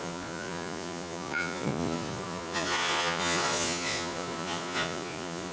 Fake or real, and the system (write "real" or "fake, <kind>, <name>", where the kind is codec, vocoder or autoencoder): fake, vocoder, Vocos